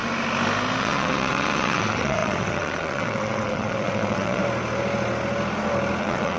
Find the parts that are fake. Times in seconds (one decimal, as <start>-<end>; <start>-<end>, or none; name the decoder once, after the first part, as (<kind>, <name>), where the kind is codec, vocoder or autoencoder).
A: 0.8-4.4 (vocoder, WaveNeXt); 6.0-6.4